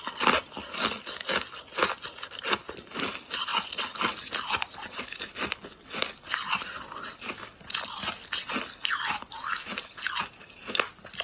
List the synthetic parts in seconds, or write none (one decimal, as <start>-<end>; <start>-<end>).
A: none

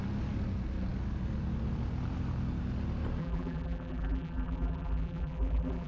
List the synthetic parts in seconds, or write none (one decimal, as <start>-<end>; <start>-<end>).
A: 3.2-5.9

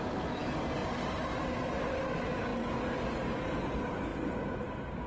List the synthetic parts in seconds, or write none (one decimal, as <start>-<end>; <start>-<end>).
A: 0.8-2.0; 2.5-3.3; 4.1-5.1

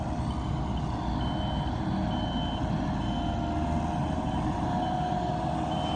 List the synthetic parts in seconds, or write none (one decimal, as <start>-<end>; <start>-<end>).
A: 4.0-5.5

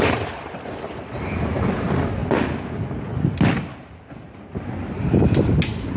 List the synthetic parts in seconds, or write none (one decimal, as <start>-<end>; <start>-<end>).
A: none

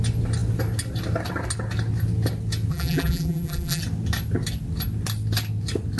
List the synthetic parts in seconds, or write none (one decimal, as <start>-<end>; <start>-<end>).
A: 2.7-3.8

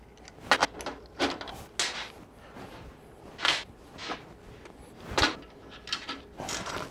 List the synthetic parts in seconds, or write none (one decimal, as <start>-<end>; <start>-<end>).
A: none